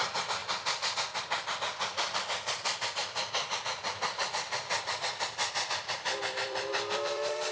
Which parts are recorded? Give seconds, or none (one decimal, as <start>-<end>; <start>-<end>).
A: 0.4-1.2